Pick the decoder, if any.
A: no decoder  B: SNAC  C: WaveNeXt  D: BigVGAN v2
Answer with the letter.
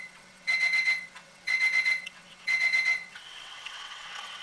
C